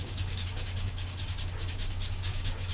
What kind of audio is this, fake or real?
fake